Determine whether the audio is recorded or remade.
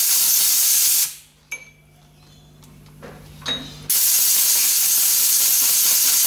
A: recorded